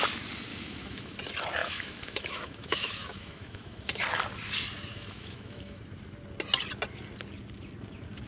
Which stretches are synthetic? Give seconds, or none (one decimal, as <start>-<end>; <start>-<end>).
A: 0.5-1.2; 1.6-4.0; 4.9-5.8